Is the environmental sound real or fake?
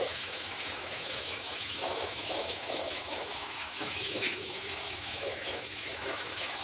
fake